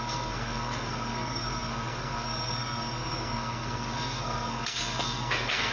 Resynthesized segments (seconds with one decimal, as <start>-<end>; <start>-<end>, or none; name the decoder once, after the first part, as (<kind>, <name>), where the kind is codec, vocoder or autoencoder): 0.0-5.7 (codec, SNAC)